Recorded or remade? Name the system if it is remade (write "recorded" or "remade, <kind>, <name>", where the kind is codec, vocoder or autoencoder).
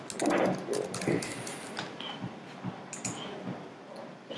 recorded